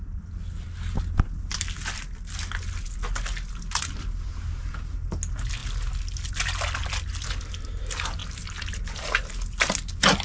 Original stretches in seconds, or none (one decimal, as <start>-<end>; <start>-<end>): 0.0-10.2